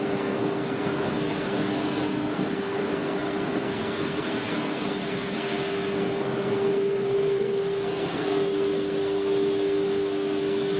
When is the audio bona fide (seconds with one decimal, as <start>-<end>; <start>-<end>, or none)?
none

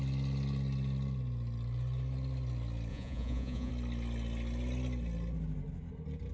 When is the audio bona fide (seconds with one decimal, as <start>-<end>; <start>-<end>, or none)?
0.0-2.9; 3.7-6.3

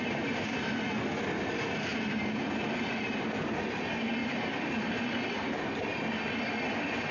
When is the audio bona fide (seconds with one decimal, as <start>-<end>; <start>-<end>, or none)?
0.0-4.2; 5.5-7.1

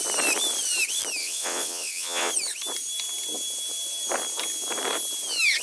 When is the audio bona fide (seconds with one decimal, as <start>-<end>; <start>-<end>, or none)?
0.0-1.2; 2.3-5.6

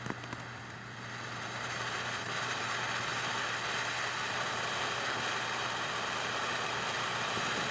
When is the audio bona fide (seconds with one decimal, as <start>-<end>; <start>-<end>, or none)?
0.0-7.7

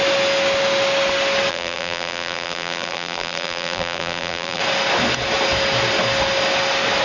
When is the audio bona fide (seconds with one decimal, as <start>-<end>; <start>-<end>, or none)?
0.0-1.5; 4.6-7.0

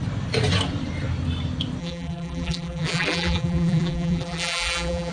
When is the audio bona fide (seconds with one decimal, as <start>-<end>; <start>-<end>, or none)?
0.0-1.8